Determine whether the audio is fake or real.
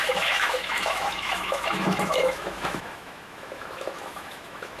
fake